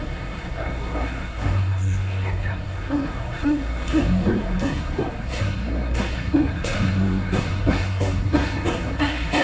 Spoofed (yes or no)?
yes